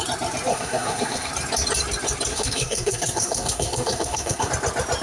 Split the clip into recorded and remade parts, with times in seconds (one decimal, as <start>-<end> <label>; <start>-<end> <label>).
0.0-0.5 recorded; 0.5-1.3 remade; 1.3-2.3 recorded; 2.3-4.5 remade; 4.5-5.0 recorded